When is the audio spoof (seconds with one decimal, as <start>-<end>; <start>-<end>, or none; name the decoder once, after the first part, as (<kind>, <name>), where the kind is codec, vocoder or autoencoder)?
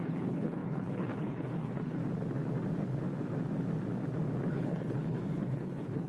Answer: 0.0-2.0 (codec, HILCodec); 4.5-6.1